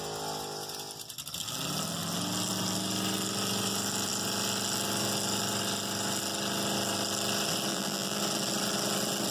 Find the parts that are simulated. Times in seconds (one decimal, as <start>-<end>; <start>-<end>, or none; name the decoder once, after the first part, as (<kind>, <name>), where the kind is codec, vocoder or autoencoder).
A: 7.7-8.2 (vocoder, BigVGAN v2)